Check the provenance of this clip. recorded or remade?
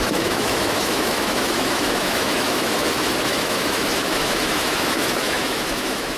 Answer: remade